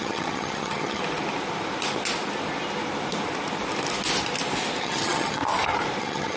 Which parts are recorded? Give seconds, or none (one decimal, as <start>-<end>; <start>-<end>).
1.0-4.8; 5.4-6.0